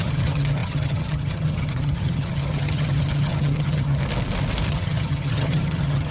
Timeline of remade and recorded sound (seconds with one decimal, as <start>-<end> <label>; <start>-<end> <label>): 0.0-4.0 remade; 4.0-4.7 recorded; 4.7-6.1 remade